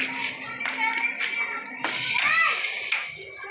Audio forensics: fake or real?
real